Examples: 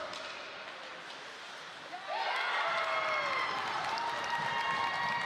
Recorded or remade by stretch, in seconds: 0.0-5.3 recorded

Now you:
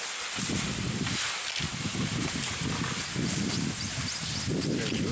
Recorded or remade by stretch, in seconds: 0.0-5.1 recorded

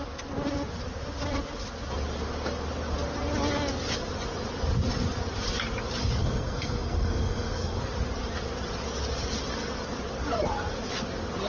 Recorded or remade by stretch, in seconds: 0.0-6.2 recorded; 6.2-7.8 remade; 7.8-11.5 recorded